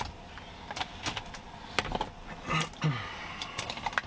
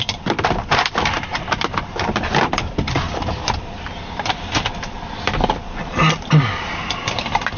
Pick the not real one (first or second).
second